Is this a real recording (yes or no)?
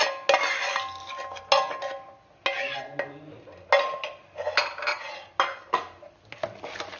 yes